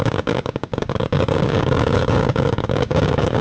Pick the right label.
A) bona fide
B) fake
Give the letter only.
B